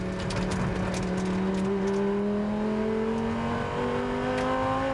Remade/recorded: recorded